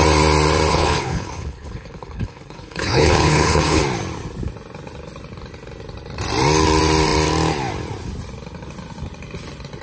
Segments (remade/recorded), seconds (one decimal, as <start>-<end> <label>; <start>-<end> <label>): 0.0-0.7 recorded; 0.7-3.8 remade; 3.8-9.8 recorded